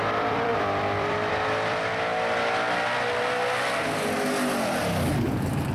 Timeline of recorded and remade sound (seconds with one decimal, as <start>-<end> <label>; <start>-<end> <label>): 0.0-2.1 remade; 2.1-5.3 recorded; 5.3-5.7 remade